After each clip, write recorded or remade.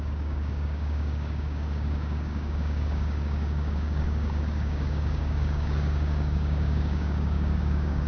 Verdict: remade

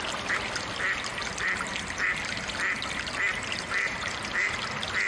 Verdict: recorded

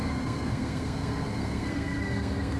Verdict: remade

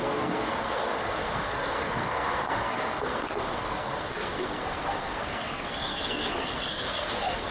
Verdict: remade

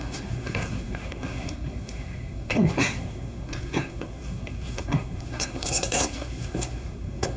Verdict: remade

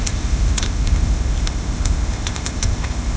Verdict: remade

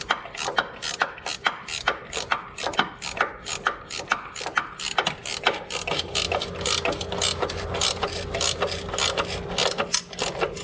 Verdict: recorded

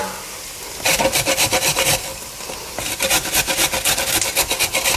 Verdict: recorded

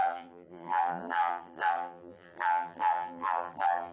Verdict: remade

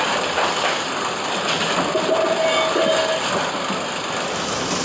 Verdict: recorded